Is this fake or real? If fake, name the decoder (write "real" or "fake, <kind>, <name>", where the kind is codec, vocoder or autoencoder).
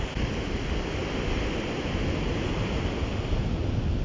real